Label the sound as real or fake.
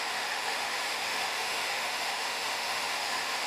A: fake